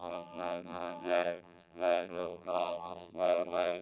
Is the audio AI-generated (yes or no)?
yes